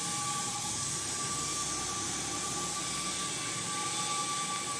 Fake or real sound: real